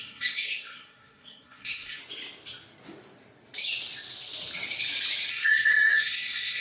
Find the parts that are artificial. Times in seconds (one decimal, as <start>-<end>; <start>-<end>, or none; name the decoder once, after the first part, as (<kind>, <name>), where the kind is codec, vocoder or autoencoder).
0.0-2.0 (codec, SNAC); 5.3-6.6